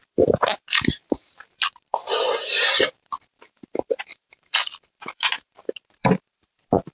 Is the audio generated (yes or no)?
yes